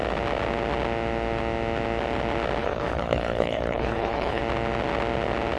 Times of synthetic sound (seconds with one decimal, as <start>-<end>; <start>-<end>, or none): 2.6-4.4